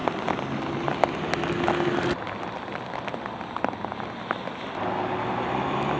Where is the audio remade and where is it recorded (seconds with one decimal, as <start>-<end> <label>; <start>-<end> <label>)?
0.0-6.0 recorded

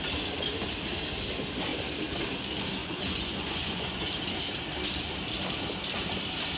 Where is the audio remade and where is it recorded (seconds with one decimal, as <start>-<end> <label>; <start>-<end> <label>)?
0.0-2.8 recorded; 2.8-4.1 remade; 4.1-6.6 recorded

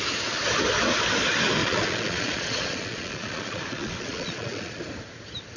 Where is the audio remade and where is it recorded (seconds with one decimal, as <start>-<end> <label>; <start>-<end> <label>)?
0.0-1.6 recorded; 1.6-4.8 remade; 4.8-5.6 recorded

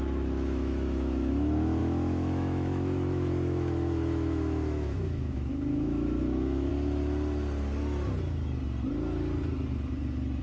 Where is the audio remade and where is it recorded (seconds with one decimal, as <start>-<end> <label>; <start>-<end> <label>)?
0.0-6.7 remade; 6.7-10.4 recorded

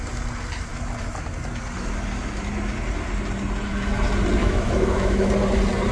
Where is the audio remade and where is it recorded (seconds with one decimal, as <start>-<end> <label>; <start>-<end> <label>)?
0.0-4.4 recorded; 4.4-5.3 remade; 5.3-5.9 recorded

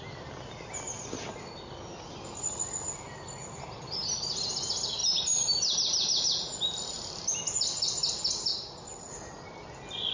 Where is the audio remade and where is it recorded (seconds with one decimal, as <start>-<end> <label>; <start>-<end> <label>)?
0.0-10.1 recorded